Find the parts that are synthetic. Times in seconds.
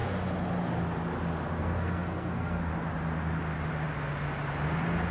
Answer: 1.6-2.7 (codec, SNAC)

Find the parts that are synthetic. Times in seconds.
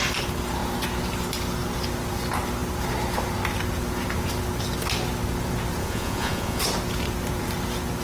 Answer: 5.8-6.6 (vocoder, Vocos)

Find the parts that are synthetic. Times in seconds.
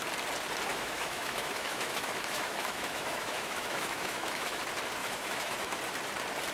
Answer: 0.7-4.6 (autoencoder, DAC-VAE); 5.0-5.8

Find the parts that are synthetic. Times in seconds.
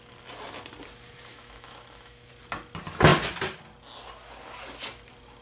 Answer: 1.3-2.3 (autoencoder, DAC-VAE)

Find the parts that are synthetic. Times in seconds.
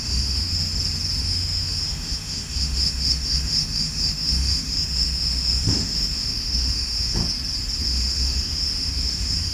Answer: 0.0-0.7 (autoencoder, DAC-VAE); 1.2-7.2; 7.8-9.5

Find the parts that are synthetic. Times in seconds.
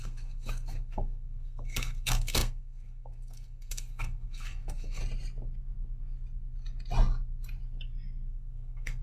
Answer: 0.0-5.0 (codec, SNAC); 8.3-9.0